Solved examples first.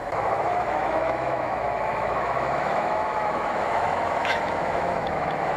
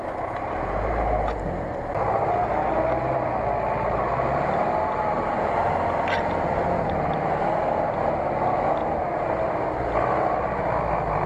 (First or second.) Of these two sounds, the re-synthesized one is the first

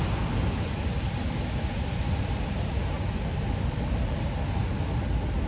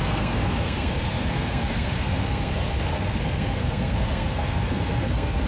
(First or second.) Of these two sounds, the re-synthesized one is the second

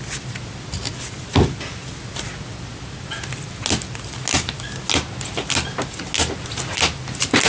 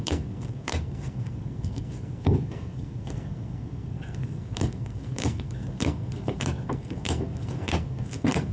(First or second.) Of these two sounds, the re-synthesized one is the second